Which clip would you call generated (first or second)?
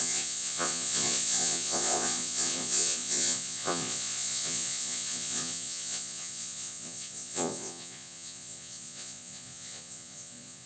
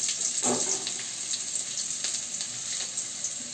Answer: first